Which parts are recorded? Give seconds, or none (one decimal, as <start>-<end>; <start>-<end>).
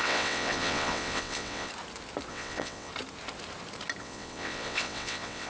1.7-2.3; 2.9-4.0